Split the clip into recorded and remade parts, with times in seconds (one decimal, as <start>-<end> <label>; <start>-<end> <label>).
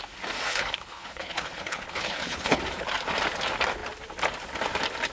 0.0-0.5 recorded; 0.5-2.6 remade; 2.6-5.1 recorded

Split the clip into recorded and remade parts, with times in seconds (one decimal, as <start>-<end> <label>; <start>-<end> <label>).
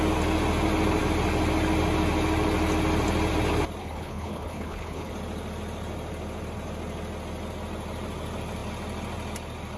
0.0-3.8 recorded; 3.8-5.1 remade; 5.1-9.8 recorded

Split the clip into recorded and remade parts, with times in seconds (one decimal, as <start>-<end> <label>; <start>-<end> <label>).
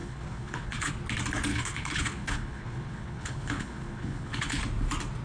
0.0-0.9 remade; 0.9-1.5 recorded; 1.5-4.6 remade; 4.6-5.2 recorded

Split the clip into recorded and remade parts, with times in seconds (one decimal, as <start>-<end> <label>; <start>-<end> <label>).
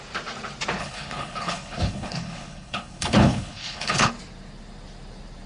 0.0-0.8 recorded; 0.8-4.1 remade; 4.1-5.5 recorded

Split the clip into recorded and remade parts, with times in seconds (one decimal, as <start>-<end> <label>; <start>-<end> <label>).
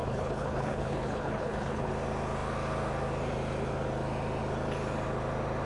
0.0-1.9 remade; 1.9-5.7 recorded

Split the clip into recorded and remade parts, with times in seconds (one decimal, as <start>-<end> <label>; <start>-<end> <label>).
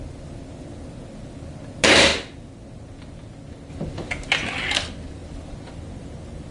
0.0-6.5 recorded